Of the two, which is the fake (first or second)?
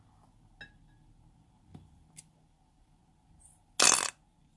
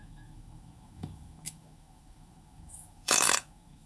second